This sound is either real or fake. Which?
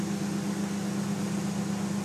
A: real